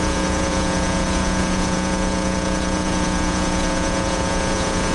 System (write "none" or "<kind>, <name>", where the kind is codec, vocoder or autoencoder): vocoder, Vocos